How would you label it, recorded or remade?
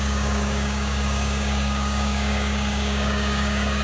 remade